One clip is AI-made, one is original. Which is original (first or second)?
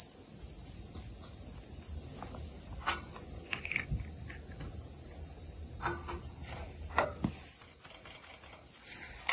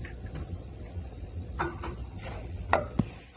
first